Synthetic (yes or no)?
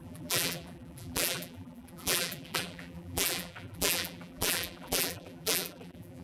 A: yes